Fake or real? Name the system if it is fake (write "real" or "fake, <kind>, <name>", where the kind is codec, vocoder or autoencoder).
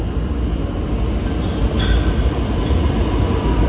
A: real